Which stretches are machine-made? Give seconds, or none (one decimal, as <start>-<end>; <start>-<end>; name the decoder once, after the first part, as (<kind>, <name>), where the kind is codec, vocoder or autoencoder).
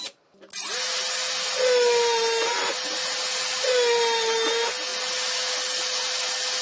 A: none